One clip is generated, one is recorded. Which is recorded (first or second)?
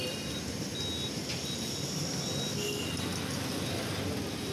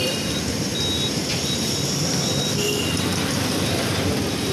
first